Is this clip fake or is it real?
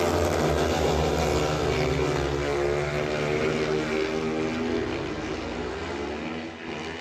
real